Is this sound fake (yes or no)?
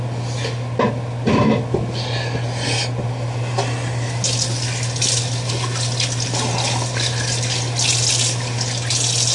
no